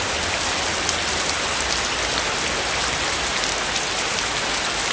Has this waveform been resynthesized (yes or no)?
no